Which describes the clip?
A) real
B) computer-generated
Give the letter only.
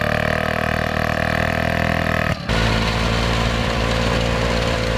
B